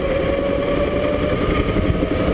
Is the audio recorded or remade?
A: recorded